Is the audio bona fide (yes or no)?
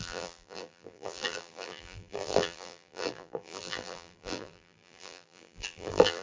no